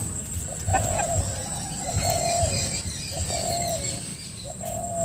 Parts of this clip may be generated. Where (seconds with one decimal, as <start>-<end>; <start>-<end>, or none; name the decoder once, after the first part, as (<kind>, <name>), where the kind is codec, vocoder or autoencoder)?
0.7-2.8 (vocoder, BigVGAN v2); 4.1-4.6